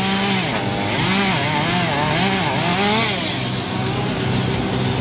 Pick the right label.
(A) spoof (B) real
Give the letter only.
B